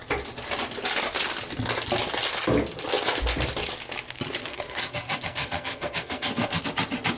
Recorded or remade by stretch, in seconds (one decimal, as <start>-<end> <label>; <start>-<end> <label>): 0.0-4.5 recorded; 4.5-6.6 remade; 6.6-7.2 recorded